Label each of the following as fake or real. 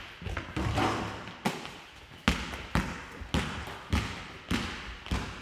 real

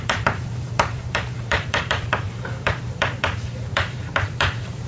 fake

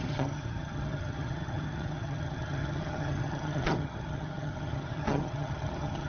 fake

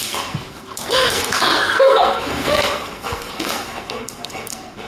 fake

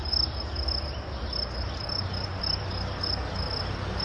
real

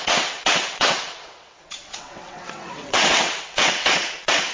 fake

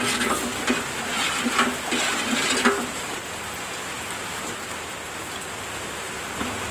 real